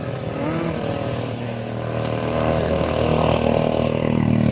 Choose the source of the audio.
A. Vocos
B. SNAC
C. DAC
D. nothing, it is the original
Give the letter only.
D